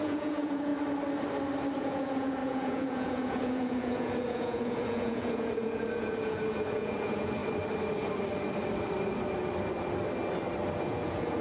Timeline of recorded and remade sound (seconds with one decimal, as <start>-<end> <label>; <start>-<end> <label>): 0.0-0.7 remade; 0.7-1.8 recorded; 1.8-7.4 remade; 7.4-10.8 recorded; 10.8-11.4 remade